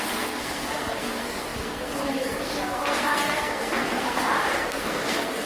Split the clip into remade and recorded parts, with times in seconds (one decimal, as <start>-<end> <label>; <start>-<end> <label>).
0.0-5.5 remade